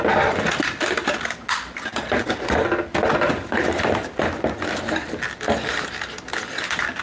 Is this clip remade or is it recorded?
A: recorded